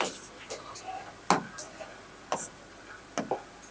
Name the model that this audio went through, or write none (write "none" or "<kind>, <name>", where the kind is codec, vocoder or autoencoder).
none